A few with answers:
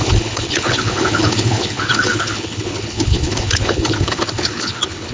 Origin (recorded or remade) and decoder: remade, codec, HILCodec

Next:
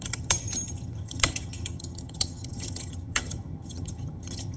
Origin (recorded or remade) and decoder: remade, vocoder, HiFi-GAN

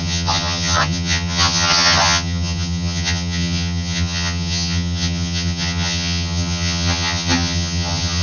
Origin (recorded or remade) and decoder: remade, vocoder, HiFi-GAN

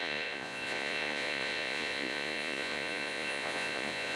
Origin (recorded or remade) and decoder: remade, vocoder, Vocos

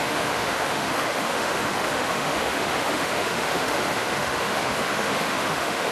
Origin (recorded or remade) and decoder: remade, autoencoder, DAC-VAE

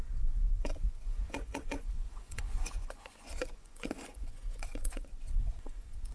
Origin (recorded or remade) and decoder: remade, vocoder, Vocos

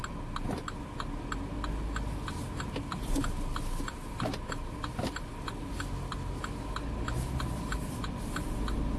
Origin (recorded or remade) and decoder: recorded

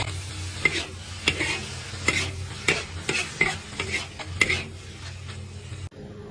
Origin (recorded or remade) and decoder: recorded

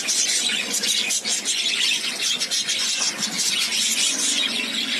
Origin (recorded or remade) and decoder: remade, vocoder, Vocos